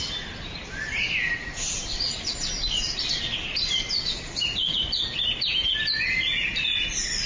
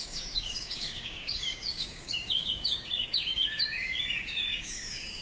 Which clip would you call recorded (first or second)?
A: first